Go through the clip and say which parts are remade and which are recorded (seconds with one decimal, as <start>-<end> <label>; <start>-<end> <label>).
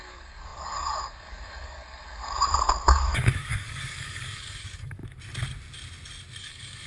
0.0-5.0 remade; 5.0-6.4 recorded; 6.4-6.9 remade